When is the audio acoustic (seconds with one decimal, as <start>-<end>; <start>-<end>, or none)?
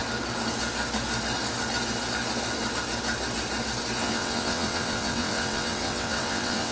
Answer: 0.0-4.0